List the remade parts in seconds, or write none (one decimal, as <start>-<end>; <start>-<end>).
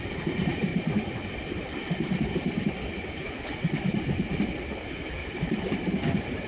0.7-1.2; 5.2-5.9